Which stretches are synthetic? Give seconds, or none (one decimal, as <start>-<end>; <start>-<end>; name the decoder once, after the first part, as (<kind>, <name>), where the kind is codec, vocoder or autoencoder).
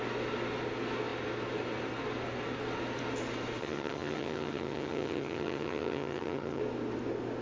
3.6-6.6 (vocoder, HiFi-GAN)